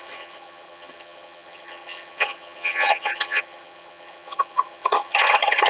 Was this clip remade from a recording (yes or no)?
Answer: yes